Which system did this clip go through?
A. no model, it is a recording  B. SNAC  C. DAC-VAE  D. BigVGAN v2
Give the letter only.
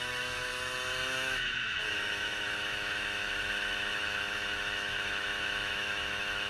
C